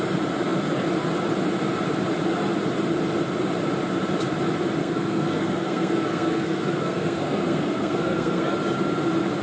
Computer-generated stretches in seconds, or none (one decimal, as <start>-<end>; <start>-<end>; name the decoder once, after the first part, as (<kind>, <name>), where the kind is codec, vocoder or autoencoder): 4.8-8.5 (codec, SNAC)